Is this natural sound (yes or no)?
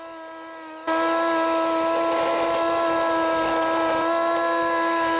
yes